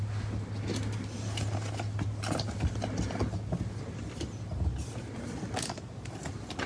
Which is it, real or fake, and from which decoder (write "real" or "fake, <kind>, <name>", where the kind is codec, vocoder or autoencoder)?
real